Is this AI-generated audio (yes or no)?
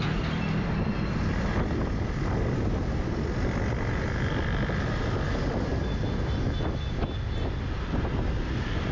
no